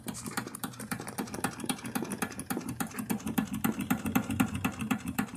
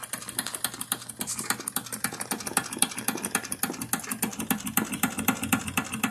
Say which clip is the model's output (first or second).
first